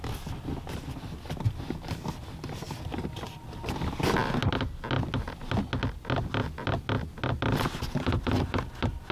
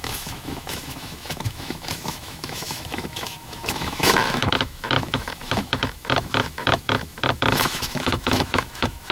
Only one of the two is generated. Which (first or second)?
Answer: second